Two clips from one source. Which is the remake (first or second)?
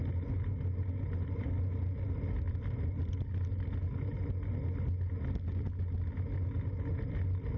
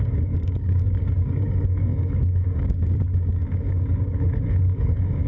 second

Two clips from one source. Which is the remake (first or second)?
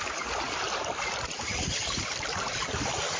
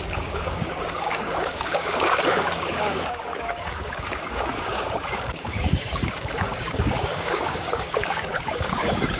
second